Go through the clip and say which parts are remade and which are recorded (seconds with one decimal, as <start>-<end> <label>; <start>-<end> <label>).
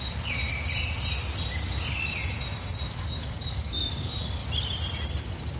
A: 0.0-0.4 remade; 0.4-2.9 recorded; 2.9-4.4 remade; 4.4-5.6 recorded